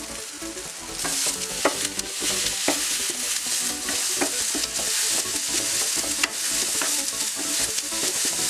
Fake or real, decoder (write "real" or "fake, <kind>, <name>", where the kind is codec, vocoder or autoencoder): real